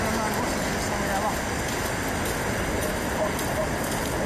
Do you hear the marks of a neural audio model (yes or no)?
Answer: no